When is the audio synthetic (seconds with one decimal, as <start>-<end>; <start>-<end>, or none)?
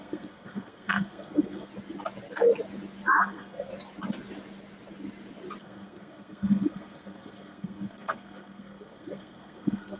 0.0-1.7; 3.2-3.7; 5.6-10.0